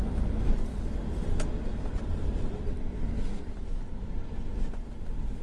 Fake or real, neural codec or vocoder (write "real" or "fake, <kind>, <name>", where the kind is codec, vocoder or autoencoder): real